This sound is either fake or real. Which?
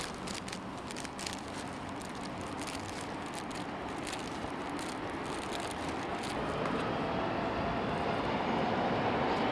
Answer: real